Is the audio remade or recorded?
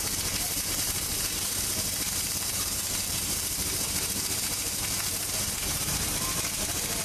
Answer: remade